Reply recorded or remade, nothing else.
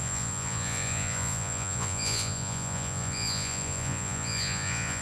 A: remade